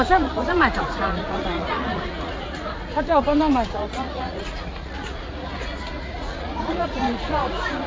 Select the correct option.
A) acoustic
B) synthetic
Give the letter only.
B